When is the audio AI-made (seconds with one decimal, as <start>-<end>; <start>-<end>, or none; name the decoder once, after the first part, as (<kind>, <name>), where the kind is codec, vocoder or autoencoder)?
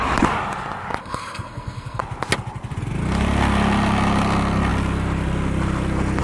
1.0-2.0 (codec, SNAC)